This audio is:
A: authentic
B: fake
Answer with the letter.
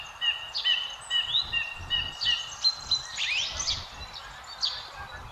A